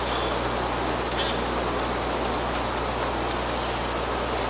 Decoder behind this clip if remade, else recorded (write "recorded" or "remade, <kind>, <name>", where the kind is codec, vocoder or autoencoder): recorded